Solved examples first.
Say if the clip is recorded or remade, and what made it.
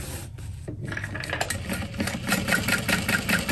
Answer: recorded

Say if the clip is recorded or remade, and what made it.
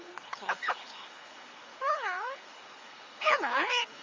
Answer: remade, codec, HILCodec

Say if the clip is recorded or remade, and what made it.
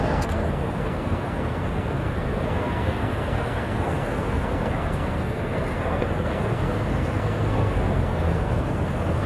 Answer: remade, codec, SNAC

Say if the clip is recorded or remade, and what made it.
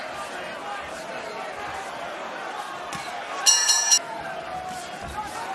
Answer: recorded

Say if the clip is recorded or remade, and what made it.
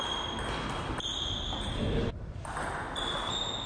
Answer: recorded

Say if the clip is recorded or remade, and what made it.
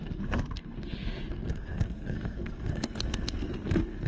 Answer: remade, codec, SNAC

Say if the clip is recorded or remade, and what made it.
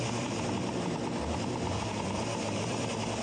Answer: remade, vocoder, BigVGAN v2